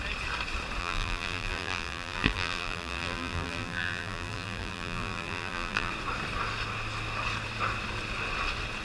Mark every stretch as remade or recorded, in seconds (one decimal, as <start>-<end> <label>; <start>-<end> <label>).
0.0-0.8 recorded; 0.8-5.9 remade; 5.9-8.8 recorded